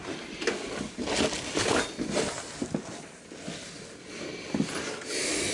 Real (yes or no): yes